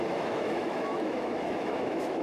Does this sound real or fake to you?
fake